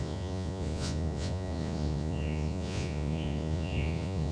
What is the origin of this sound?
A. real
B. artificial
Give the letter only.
B